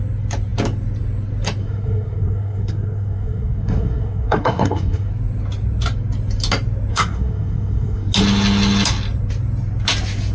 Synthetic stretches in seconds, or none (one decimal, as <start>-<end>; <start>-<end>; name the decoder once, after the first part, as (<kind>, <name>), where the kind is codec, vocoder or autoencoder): 1.6-5.1 (codec, SNAC); 6.9-8.1